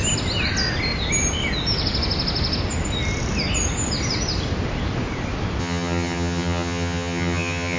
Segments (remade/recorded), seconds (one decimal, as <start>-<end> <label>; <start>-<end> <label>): 0.0-5.6 recorded; 5.6-7.8 remade